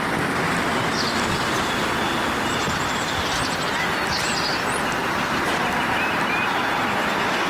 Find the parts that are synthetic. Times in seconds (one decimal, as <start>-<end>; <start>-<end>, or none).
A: none